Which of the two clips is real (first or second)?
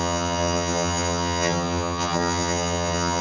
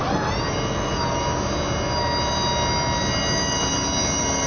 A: second